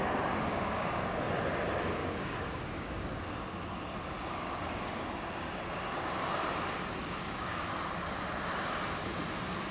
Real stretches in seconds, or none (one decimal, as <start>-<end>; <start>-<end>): 0.0-0.5; 1.2-2.0; 3.3-4.3; 5.0-7.0; 7.6-9.7